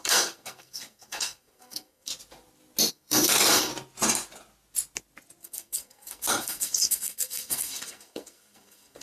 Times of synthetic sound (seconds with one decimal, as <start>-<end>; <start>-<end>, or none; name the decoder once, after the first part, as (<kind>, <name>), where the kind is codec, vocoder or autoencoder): 0.0-2.1 (codec, SNAC); 2.9-3.7; 5.4-9.0

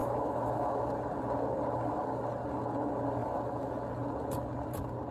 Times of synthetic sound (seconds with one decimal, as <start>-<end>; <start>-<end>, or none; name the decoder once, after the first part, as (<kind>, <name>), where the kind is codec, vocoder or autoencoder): 0.0-0.9 (autoencoder, DAC-VAE); 3.2-3.8

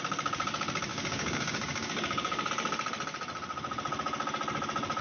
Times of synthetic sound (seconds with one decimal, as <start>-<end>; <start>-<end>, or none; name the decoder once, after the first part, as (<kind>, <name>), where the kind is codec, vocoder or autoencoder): 0.9-2.5 (codec, DAC)